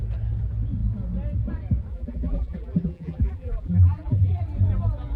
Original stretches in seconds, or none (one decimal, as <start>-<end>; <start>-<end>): 0.0-1.9; 4.4-5.2